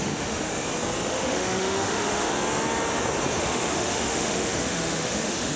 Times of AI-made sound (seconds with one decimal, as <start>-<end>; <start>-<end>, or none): 0.0-0.5; 1.1-2.3; 3.4-5.6